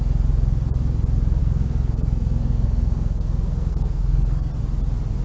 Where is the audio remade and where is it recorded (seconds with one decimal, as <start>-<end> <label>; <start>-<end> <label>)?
0.0-1.4 recorded; 1.4-4.5 remade; 4.5-5.2 recorded